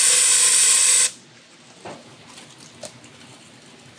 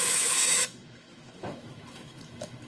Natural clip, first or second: first